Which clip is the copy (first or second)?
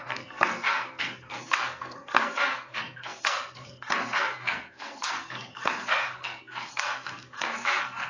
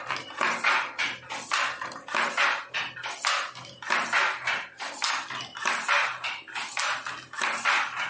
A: first